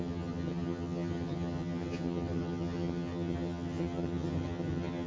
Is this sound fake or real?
fake